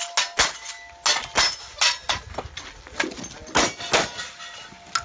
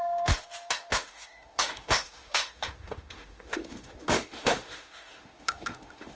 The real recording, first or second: first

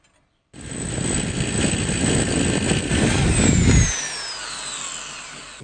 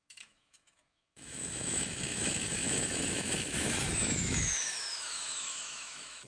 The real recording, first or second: first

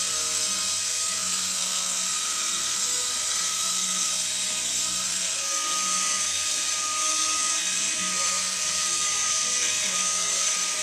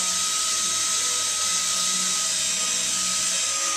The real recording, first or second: second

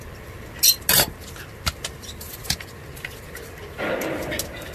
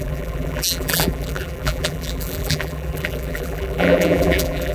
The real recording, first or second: first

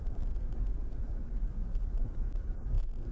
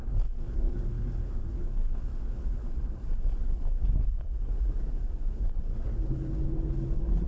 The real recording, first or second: first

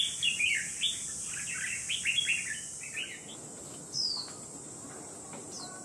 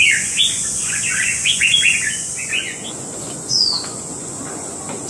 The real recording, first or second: first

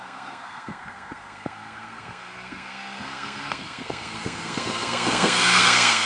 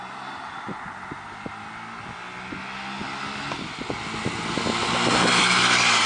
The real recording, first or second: second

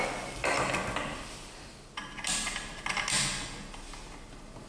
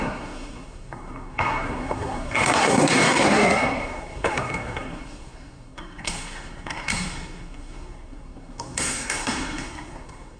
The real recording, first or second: first